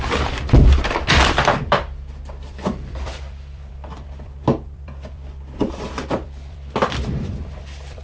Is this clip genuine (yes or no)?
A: no